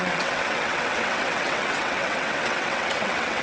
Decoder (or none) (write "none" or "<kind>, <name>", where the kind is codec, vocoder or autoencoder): vocoder, WaveNeXt